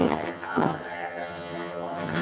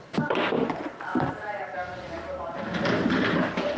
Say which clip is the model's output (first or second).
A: first